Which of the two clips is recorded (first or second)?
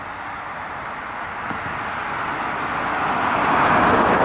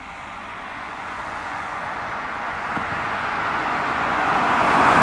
first